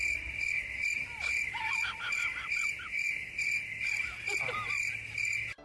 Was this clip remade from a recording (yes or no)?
no